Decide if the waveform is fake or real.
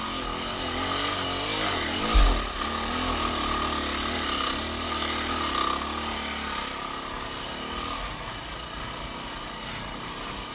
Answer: real